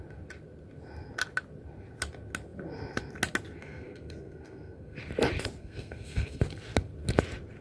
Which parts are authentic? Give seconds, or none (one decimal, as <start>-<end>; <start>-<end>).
0.0-3.6; 5.0-5.6; 6.4-7.6